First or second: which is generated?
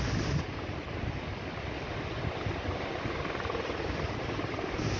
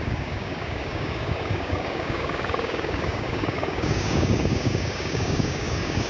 second